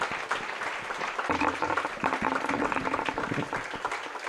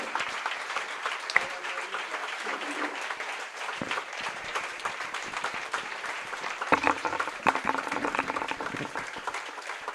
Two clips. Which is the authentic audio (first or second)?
first